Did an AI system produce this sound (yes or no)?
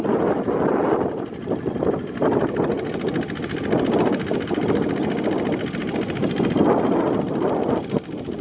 no